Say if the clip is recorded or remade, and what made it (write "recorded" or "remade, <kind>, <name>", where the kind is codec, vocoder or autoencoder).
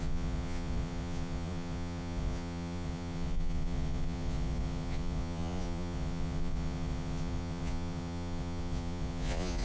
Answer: remade, vocoder, Vocos